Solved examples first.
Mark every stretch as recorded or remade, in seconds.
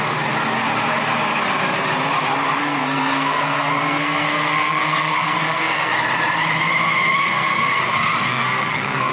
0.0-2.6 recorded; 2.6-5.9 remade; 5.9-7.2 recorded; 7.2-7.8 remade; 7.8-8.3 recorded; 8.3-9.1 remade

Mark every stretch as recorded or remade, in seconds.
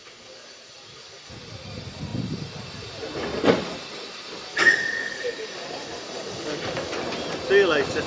0.0-1.3 remade; 1.3-4.5 recorded; 4.5-6.9 remade; 6.9-8.1 recorded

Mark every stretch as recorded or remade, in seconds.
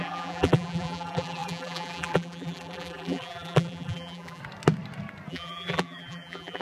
0.0-4.4 remade; 4.4-5.3 recorded; 5.3-6.6 remade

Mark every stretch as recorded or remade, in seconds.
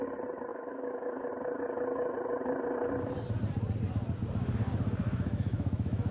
0.0-0.5 recorded; 0.5-1.3 remade; 1.3-5.0 recorded; 5.0-6.1 remade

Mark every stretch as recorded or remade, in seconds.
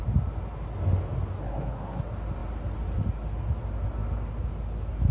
0.0-1.4 recorded; 1.4-2.0 remade; 2.0-5.1 recorded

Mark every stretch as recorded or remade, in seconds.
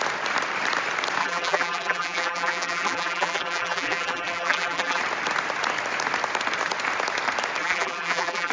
0.0-1.2 recorded; 1.2-5.0 remade; 5.0-7.6 recorded; 7.6-8.5 remade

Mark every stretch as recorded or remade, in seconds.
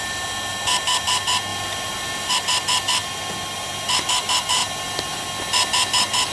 0.0-6.3 recorded